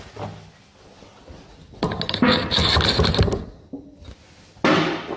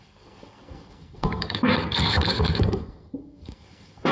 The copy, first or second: second